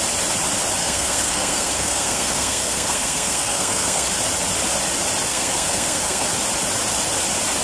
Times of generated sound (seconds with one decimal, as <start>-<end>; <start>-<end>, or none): 0.8-4.1; 5.3-6.3

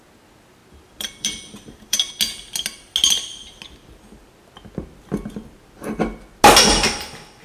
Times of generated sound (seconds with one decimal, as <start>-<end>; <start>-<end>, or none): 0.6-2.1

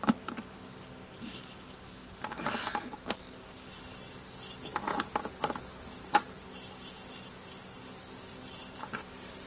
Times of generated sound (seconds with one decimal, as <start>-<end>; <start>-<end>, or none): none

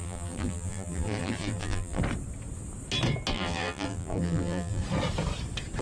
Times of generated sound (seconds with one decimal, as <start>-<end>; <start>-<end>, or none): 0.0-2.0; 3.3-4.8

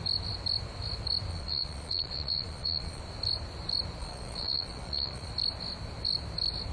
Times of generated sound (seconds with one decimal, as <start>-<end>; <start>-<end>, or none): 1.3-3.0; 4.0-5.3

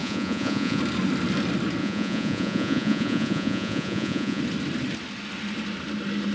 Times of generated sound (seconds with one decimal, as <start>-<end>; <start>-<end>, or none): 0.0-0.8; 1.8-4.4

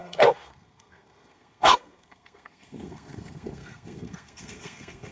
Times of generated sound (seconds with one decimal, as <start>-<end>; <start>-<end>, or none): 0.0-5.1